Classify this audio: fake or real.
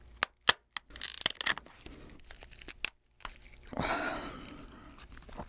real